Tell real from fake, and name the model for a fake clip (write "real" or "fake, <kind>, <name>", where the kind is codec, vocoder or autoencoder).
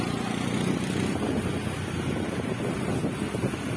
real